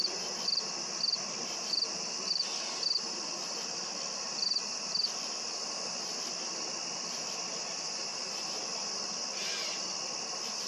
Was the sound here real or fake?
real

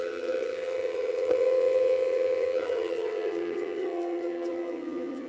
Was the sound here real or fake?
fake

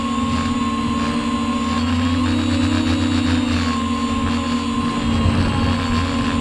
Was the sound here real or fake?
real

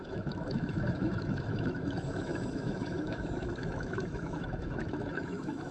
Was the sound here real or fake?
fake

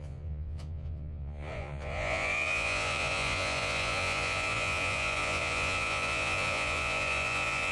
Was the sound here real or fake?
fake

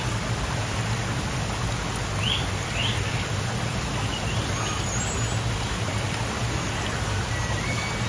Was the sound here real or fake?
real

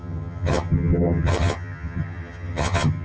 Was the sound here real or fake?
fake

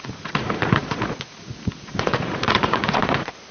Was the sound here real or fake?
fake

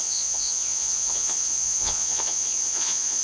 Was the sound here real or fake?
fake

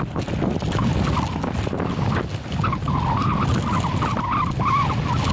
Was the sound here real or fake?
real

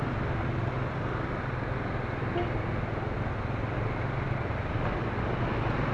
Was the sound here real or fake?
real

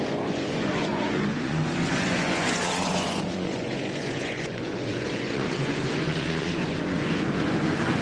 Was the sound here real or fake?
fake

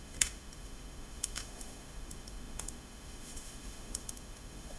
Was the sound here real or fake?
fake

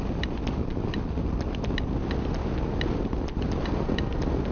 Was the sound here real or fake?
real